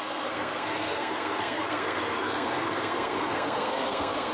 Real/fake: fake